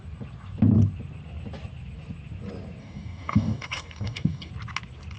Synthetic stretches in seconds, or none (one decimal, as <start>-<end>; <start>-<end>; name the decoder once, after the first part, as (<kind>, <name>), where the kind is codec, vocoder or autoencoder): 2.8-4.5 (codec, DAC)